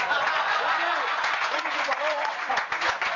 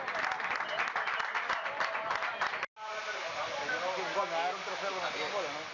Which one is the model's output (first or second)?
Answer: first